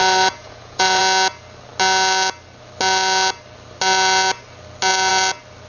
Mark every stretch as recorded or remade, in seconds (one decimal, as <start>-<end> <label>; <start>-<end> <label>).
0.0-1.0 remade; 1.0-5.7 recorded